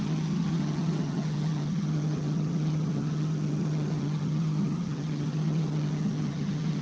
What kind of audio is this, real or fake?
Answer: fake